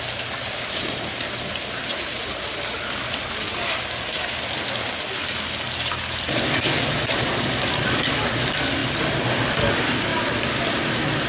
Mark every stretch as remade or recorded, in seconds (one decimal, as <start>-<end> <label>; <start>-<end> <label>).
0.0-11.3 recorded